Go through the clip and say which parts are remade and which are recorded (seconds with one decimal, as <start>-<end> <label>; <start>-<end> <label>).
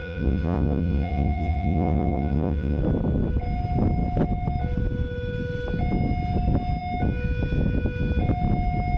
0.0-2.8 remade; 2.8-9.0 recorded